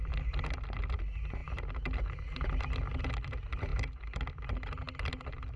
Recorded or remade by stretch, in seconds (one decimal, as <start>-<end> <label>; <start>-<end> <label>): 0.0-5.6 recorded